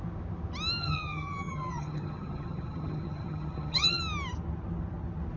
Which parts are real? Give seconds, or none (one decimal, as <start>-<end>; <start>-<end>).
0.0-0.8; 4.0-5.4